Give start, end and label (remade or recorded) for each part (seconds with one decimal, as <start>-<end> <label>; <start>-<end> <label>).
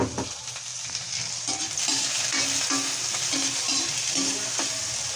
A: 0.0-5.2 recorded